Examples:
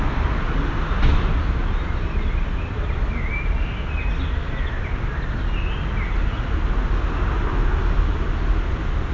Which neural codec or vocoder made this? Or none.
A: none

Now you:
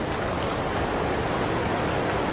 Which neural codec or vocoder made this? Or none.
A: none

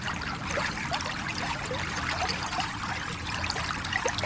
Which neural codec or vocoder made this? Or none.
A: vocoder, BigVGAN v2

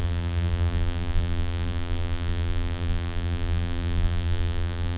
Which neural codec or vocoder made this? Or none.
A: vocoder, BigVGAN v2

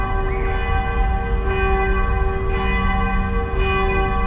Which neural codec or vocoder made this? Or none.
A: none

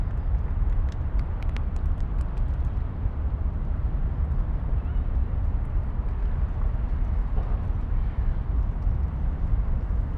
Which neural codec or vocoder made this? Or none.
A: vocoder, BigVGAN v2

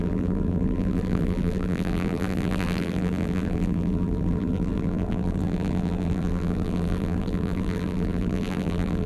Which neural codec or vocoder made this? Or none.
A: vocoder, BigVGAN v2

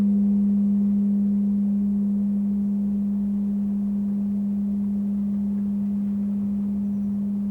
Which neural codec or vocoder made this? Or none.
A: none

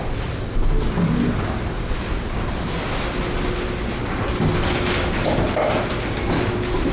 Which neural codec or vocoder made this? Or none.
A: none